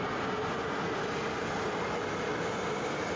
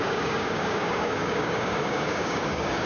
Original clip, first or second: first